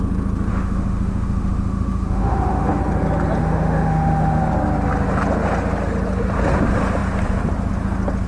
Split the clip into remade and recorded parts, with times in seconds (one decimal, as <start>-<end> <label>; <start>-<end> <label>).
0.0-0.5 recorded; 0.5-2.8 remade; 2.8-3.4 recorded; 3.4-4.4 remade; 4.4-8.3 recorded